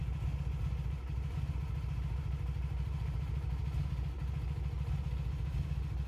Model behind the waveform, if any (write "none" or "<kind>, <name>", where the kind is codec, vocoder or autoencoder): none